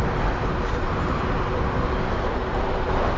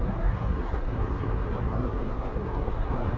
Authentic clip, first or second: first